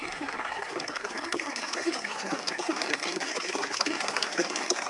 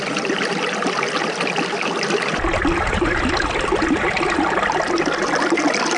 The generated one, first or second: first